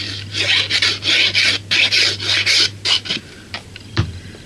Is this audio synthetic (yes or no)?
no